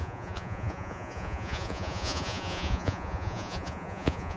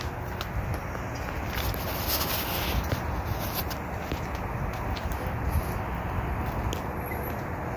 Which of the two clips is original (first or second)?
second